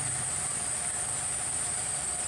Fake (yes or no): no